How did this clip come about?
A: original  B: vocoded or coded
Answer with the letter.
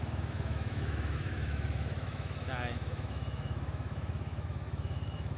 B